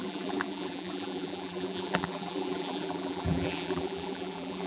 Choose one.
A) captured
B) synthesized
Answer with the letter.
B